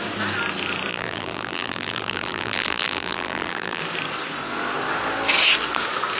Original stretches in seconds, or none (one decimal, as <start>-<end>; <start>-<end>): 0.0-0.9; 3.8-6.2